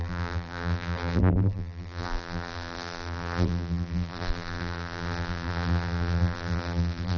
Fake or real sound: fake